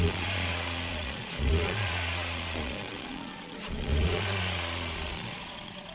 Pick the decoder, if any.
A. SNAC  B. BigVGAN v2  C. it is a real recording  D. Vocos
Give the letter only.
D